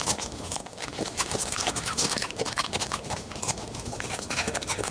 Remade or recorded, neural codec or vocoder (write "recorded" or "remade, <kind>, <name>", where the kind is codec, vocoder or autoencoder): remade, autoencoder, DAC-VAE